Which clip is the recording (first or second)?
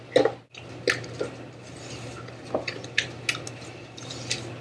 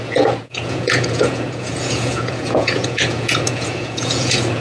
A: first